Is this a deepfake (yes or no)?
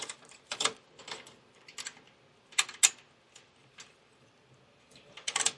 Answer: no